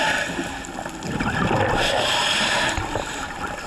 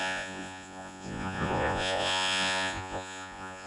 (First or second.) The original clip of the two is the first